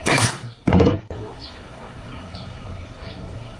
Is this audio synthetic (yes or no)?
yes